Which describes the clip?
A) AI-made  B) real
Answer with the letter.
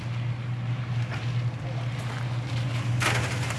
B